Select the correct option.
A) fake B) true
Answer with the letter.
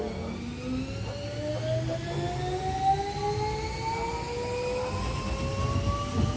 B